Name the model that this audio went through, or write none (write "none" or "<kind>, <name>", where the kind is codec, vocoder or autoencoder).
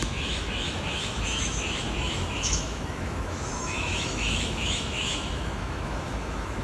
autoencoder, DAC-VAE